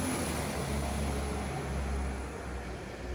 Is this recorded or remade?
recorded